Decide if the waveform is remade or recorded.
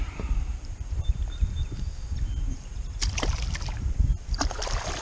remade